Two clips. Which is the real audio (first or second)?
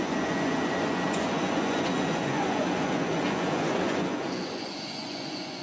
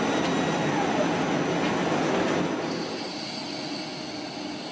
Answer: second